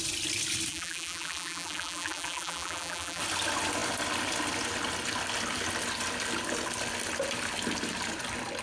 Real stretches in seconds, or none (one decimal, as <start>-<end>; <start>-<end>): 0.0-0.7; 3.2-8.6